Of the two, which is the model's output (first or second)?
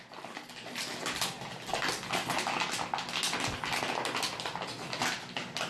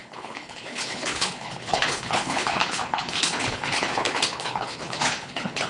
second